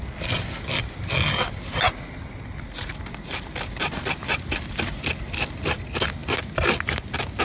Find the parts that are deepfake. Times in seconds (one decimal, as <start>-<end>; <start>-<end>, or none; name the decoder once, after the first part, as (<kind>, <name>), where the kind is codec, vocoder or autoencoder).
none